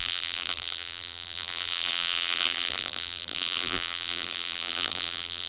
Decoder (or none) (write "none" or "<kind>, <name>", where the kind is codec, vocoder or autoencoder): vocoder, BigVGAN v2